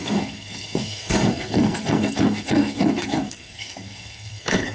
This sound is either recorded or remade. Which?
remade